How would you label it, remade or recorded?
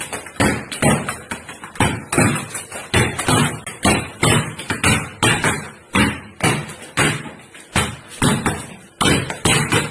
recorded